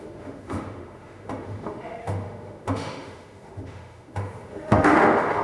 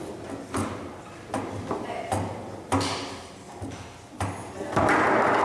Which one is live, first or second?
second